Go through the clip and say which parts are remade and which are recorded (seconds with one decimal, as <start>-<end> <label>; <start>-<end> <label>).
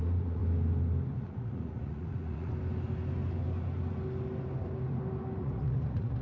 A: 0.0-0.4 remade; 0.4-1.2 recorded; 1.2-2.5 remade; 2.5-5.4 recorded; 5.4-6.2 remade